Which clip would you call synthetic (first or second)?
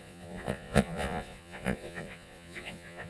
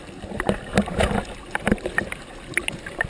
first